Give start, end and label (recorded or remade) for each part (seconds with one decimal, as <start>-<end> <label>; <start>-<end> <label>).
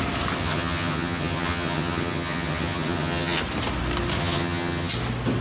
0.0-0.4 recorded; 0.4-3.4 remade; 3.4-4.2 recorded; 4.2-4.9 remade; 4.9-5.4 recorded